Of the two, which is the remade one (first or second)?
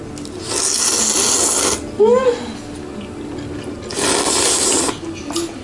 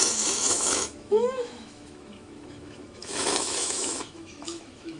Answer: second